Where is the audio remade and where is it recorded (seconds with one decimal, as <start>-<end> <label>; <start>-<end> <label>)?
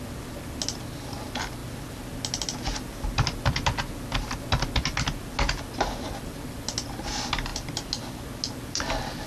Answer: 0.0-9.3 recorded